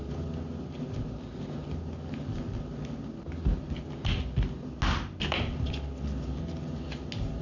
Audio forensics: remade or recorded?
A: recorded